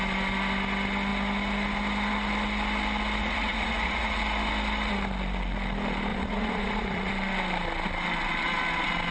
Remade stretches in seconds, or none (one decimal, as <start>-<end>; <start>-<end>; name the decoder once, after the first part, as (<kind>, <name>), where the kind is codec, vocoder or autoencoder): 3.2-4.2 (vocoder, Vocos); 6.1-7.1